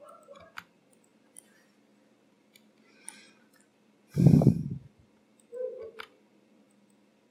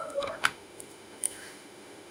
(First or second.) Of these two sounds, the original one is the first